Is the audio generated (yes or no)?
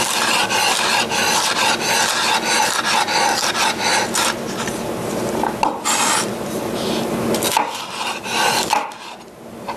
no